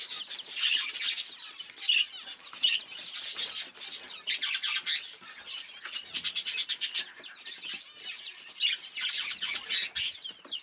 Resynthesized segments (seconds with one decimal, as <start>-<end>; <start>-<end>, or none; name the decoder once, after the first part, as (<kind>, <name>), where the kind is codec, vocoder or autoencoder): 5.6-6.5 (vocoder, Vocos)